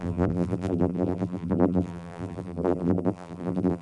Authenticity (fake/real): fake